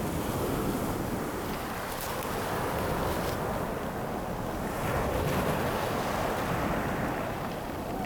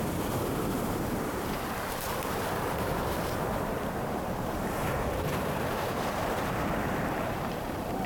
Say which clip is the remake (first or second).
second